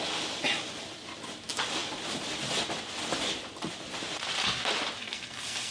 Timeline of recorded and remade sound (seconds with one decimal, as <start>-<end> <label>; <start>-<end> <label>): 0.0-5.0 recorded; 5.0-5.7 remade